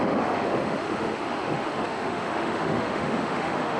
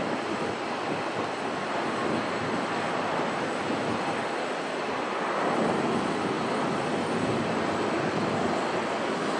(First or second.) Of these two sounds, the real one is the second